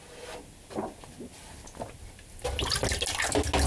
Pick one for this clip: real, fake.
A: real